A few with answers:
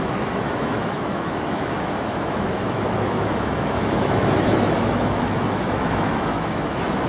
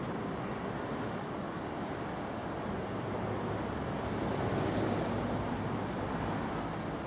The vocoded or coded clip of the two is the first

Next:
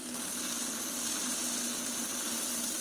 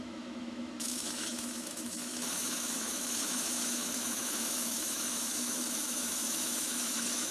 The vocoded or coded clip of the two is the second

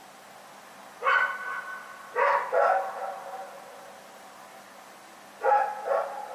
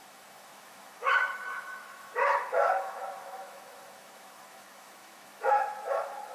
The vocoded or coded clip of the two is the second